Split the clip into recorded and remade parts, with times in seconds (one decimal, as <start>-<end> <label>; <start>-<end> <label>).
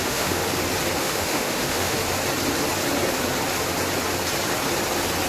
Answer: 0.0-0.4 remade; 0.4-1.0 recorded; 1.0-2.0 remade; 2.0-5.3 recorded